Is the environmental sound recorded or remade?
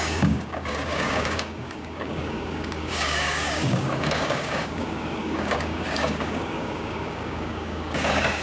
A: remade